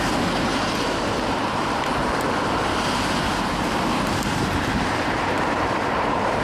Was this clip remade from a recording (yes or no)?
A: yes